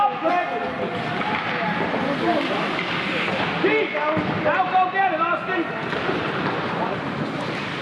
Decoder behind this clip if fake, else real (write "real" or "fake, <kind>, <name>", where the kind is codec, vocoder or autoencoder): real